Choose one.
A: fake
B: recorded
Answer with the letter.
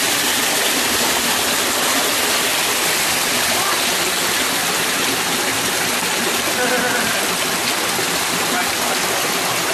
B